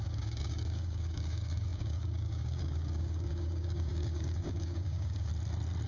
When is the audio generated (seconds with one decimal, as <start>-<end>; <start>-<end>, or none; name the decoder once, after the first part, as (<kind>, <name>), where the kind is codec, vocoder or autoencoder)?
0.0-5.3 (codec, DAC)